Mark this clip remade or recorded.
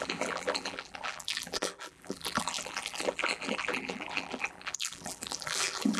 remade